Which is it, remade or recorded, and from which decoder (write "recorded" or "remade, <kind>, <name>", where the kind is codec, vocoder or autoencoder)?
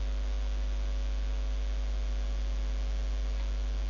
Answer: recorded